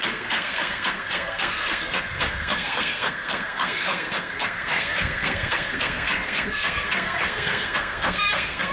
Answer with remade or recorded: remade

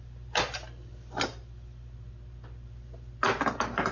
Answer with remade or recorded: recorded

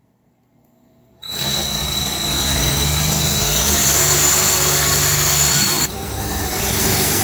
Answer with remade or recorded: remade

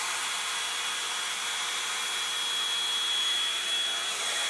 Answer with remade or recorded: recorded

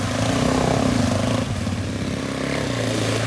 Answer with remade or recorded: recorded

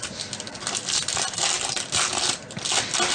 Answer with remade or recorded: recorded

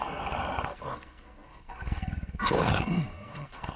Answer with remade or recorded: remade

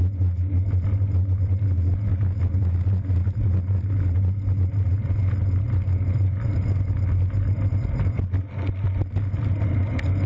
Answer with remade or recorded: recorded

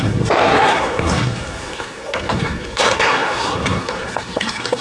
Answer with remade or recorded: remade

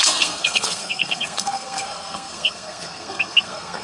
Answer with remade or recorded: remade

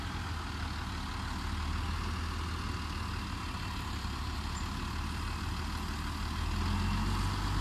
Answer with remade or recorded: recorded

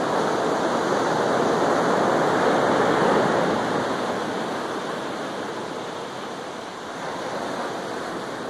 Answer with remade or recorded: recorded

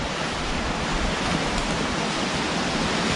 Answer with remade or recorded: recorded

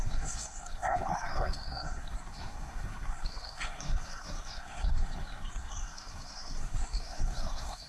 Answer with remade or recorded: remade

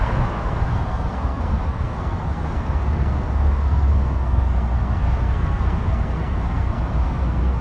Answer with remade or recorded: remade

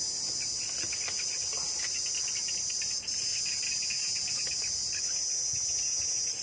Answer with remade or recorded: recorded